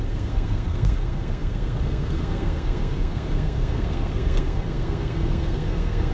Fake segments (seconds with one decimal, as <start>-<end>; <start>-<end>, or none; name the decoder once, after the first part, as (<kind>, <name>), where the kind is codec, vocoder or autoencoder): 0.0-6.1 (codec, SNAC)